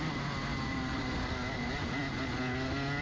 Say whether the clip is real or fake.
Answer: real